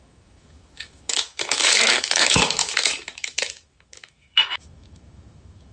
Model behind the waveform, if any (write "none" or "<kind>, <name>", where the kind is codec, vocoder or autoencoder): autoencoder, DAC-VAE